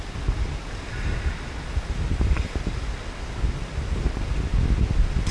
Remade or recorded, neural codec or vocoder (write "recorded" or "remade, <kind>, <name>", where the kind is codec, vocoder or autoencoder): recorded